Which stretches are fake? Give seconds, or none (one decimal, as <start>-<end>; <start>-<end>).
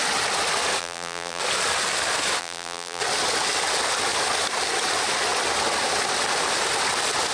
0.8-1.4; 2.4-3.0